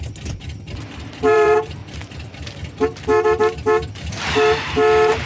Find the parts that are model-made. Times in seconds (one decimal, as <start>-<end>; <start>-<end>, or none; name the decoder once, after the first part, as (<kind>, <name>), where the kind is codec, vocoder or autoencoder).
0.0-1.8 (vocoder, BigVGAN v2)

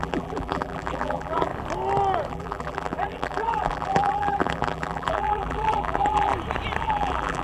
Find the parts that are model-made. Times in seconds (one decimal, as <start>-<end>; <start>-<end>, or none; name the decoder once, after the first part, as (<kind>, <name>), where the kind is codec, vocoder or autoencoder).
0.0-1.5 (vocoder, BigVGAN v2); 2.3-6.3; 6.8-7.4

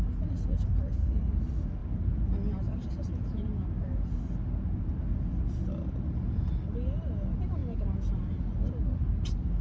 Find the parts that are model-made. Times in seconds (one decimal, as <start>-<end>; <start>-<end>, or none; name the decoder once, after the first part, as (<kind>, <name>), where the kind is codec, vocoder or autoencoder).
1.8-2.9 (vocoder, BigVGAN v2)

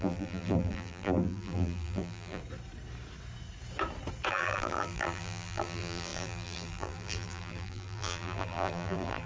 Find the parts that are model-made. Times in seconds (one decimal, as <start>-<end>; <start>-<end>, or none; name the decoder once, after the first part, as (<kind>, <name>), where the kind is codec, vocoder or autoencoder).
0.0-2.4 (vocoder, BigVGAN v2); 4.3-9.3

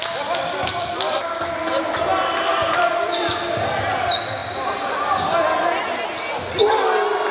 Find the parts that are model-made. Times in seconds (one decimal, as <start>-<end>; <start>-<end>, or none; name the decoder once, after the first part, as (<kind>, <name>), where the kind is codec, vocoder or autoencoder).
2.5-3.4 (vocoder, BigVGAN v2)

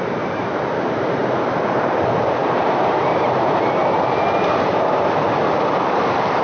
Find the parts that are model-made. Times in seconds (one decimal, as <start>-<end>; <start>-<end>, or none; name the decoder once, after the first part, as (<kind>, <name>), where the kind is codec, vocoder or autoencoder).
0.0-1.2 (vocoder, BigVGAN v2); 1.8-3.8; 5.7-6.4

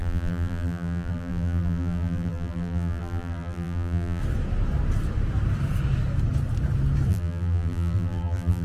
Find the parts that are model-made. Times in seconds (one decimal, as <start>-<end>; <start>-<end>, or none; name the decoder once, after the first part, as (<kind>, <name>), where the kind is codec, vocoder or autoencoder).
0.0-4.2 (vocoder, BigVGAN v2); 7.1-8.6